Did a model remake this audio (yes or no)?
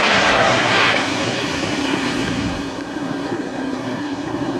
yes